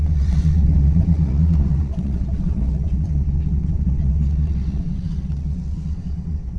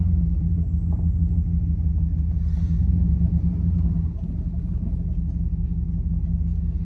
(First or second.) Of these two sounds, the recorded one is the second